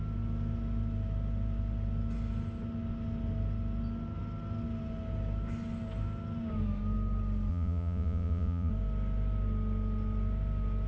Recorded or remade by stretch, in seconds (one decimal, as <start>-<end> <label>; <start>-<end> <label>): 0.0-7.5 recorded; 7.5-8.7 remade; 8.7-10.9 recorded